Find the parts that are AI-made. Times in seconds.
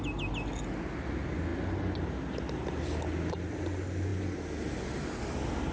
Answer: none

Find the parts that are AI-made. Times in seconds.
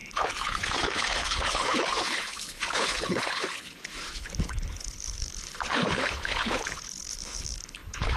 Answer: 0.0-8.2 (codec, HILCodec)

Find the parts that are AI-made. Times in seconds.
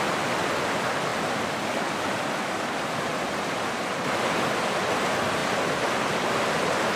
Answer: none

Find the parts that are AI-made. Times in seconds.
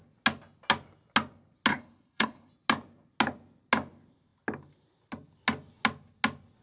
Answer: 1.7-2.5 (codec, HILCodec)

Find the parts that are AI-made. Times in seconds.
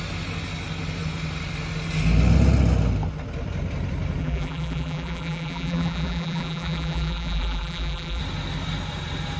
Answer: 4.2-8.2 (vocoder, BigVGAN v2)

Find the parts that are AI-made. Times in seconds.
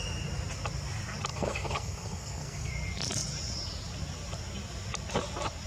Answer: 1.3-2.7 (codec, SNAC)